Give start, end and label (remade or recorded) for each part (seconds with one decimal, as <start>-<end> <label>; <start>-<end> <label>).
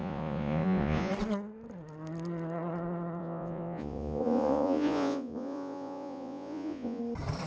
0.0-1.1 remade; 1.1-3.2 recorded; 3.2-7.0 remade; 7.0-7.5 recorded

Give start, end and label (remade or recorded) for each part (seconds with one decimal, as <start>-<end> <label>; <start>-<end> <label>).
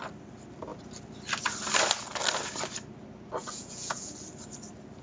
0.0-3.4 recorded; 3.4-4.1 remade; 4.1-5.0 recorded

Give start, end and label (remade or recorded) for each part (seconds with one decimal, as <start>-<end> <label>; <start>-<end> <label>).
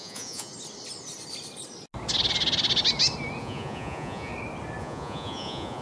0.0-0.5 remade; 0.5-3.4 recorded; 3.4-4.3 remade; 4.3-4.8 recorded; 4.8-5.8 remade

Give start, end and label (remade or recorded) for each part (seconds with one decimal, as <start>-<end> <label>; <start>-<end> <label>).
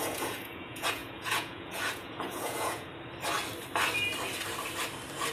0.0-2.9 remade; 2.9-5.3 recorded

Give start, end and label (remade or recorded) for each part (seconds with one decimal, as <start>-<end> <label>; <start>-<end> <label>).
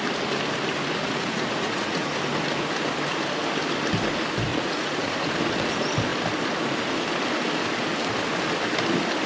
0.0-1.0 recorded; 1.0-2.1 remade; 2.1-4.5 recorded; 4.5-5.3 remade; 5.3-9.3 recorded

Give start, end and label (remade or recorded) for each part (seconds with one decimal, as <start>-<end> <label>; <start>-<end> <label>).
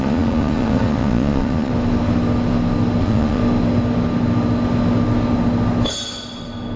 0.0-1.7 remade; 1.7-3.0 recorded; 3.0-3.4 remade; 3.4-6.8 recorded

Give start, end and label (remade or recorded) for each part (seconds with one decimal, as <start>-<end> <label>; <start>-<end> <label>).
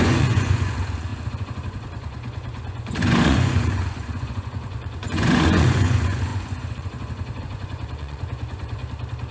0.0-8.8 remade; 8.8-9.3 recorded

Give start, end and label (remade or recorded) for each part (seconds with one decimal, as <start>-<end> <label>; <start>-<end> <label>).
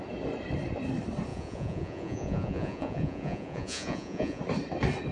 0.0-1.3 recorded; 1.3-4.4 remade; 4.4-5.1 recorded